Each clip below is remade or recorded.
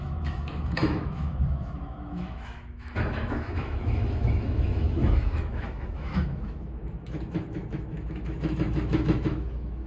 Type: remade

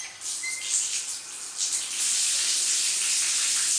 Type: recorded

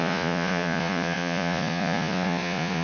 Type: remade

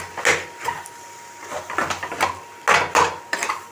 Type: recorded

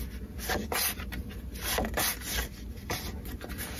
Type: recorded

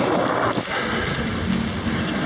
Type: recorded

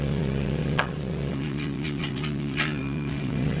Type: remade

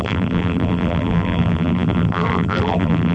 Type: remade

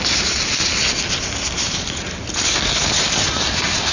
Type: recorded